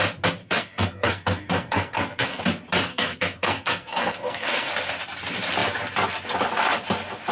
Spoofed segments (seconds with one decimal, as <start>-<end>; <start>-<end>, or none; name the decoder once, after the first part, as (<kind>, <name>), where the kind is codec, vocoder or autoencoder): 0.4-2.4 (codec, SNAC); 2.9-4.7